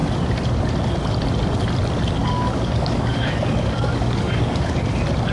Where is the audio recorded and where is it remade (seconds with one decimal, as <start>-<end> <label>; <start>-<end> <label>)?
0.0-2.2 recorded; 2.2-4.8 remade; 4.8-5.3 recorded